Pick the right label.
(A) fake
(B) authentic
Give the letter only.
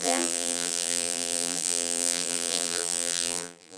A